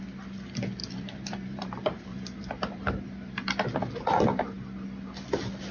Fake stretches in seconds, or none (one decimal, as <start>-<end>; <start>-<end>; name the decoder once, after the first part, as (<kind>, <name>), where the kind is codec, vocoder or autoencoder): 0.8-2.9 (vocoder, BigVGAN v2)